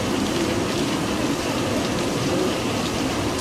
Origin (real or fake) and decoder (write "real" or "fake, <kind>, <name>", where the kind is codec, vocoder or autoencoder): real